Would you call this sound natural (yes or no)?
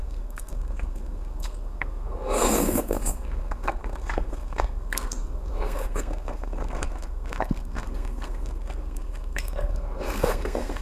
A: no